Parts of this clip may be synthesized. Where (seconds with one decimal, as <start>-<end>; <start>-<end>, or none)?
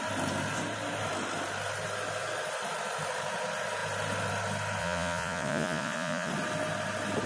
4.8-6.3